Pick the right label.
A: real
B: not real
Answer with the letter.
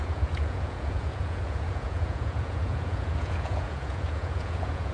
B